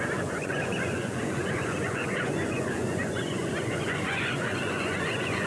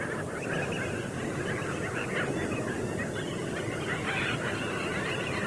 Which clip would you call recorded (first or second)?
second